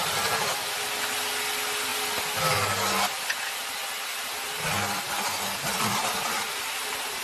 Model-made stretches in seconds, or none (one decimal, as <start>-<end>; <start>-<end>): none